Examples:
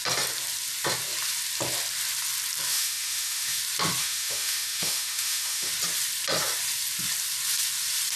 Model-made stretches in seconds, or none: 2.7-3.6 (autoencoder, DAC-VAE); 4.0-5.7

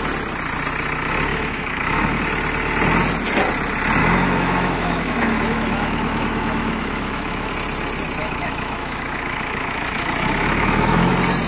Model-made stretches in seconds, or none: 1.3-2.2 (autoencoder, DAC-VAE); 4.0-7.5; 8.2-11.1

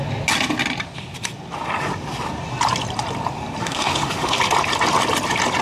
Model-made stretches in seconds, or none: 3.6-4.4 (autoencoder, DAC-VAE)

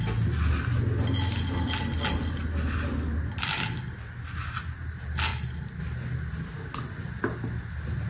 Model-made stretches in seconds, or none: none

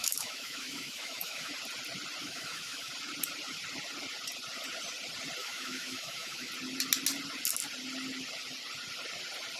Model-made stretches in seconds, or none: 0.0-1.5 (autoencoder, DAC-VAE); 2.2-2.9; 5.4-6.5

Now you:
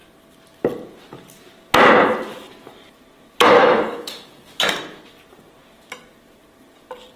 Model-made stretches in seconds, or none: 3.6-4.6 (autoencoder, DAC-VAE)